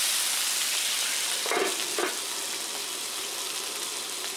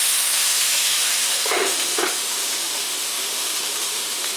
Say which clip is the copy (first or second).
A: second